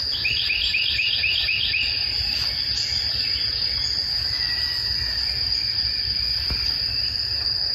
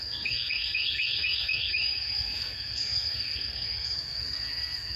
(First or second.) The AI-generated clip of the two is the second